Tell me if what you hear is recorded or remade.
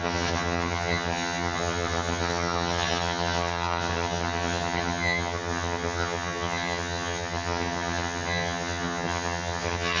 remade